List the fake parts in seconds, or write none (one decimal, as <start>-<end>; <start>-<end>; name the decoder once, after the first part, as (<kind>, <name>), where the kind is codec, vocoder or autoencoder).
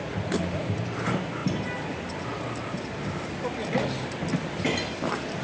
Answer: none